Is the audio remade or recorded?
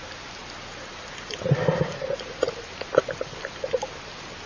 remade